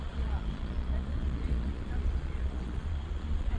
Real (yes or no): no